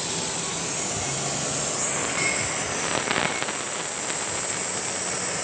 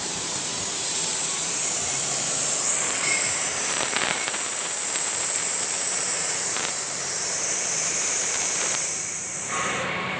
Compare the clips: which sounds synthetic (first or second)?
second